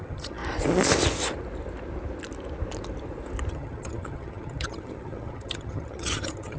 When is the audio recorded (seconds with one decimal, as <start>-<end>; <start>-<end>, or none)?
0.4-3.5